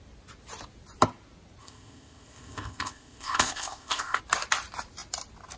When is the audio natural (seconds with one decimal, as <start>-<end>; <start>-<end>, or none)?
0.0-1.6; 4.2-5.6